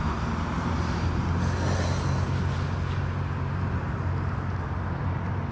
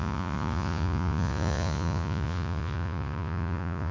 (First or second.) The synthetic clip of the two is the second